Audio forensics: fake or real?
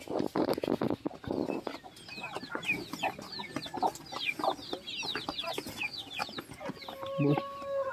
real